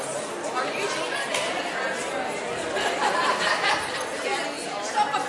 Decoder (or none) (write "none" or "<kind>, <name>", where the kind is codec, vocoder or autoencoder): none